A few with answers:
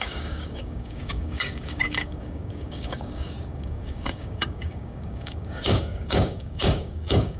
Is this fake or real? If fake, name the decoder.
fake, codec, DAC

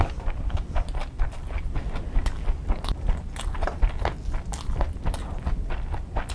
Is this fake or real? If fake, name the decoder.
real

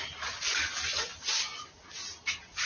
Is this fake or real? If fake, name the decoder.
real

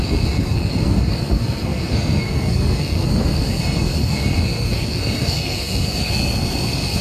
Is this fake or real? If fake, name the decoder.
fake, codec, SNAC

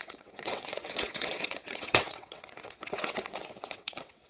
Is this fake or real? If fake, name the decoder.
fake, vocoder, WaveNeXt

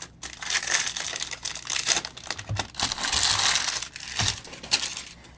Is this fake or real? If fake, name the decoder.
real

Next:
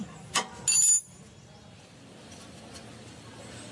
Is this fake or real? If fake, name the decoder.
real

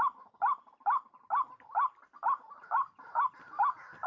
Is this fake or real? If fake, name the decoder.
real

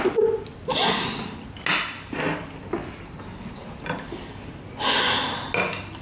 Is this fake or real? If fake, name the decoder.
real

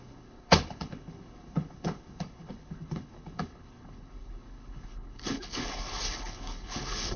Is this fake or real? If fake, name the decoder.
fake, codec, HILCodec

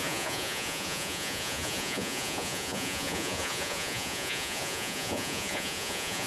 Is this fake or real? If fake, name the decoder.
fake, vocoder, Vocos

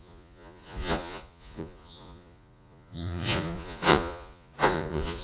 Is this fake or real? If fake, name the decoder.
fake, vocoder, Vocos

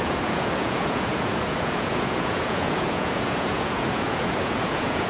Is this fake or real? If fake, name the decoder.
fake, vocoder, Vocos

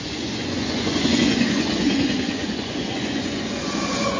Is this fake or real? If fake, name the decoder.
fake, vocoder, Vocos